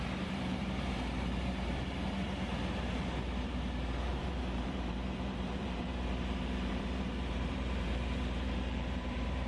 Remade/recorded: remade